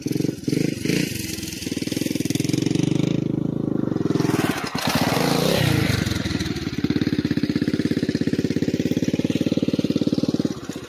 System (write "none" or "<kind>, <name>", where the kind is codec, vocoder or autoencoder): none